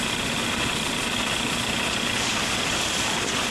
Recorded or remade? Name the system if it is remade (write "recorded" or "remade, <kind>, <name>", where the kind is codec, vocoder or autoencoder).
recorded